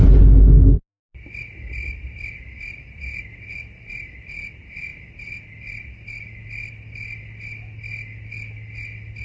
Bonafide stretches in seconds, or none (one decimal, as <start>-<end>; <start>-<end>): 0.0-9.2